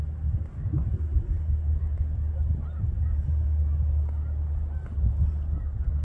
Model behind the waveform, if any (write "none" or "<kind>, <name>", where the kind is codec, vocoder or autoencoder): none